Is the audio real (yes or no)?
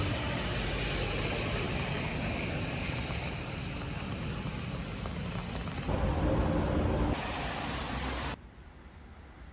yes